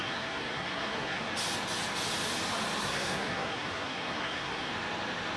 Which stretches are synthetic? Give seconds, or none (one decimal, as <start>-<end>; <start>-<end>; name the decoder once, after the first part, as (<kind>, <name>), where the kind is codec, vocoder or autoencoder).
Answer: 0.0-1.3 (codec, SNAC); 2.8-4.7